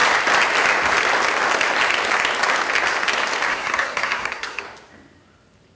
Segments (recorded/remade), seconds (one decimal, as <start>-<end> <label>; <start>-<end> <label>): 0.0-3.5 recorded; 3.5-4.6 remade; 4.6-5.8 recorded